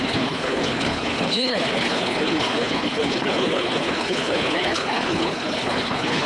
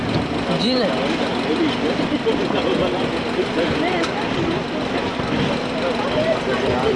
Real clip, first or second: second